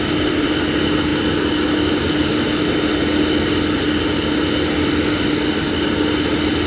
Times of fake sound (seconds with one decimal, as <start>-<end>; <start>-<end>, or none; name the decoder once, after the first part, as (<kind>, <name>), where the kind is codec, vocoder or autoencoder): none